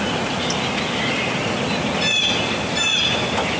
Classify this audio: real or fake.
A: real